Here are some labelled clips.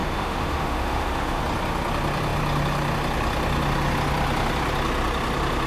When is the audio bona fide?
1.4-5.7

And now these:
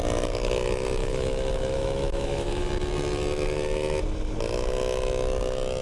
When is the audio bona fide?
0.0-1.0; 2.7-5.8

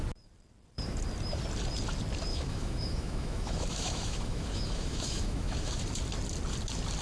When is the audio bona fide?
0.0-2.3; 5.8-7.0

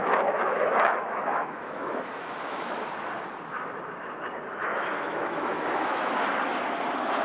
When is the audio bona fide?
2.7-4.6; 6.1-7.2

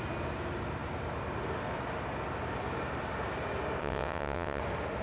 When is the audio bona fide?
0.0-3.8; 4.6-5.0

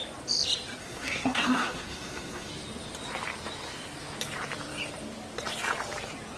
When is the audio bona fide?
0.0-0.8; 2.5-6.4

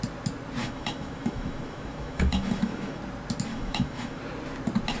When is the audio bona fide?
0.0-0.6; 3.0-3.5; 4.2-5.0

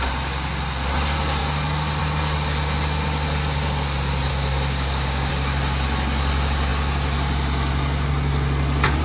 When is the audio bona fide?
0.0-4.3; 5.3-9.0